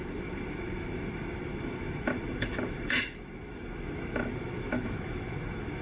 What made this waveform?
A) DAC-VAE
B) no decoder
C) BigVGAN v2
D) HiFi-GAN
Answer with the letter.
A